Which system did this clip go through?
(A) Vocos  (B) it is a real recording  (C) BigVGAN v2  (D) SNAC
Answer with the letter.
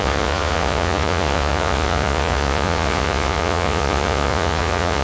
A